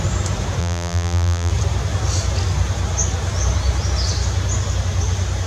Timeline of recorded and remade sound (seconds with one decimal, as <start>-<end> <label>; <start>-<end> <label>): 0.0-0.6 recorded; 0.6-1.5 remade; 1.5-5.5 recorded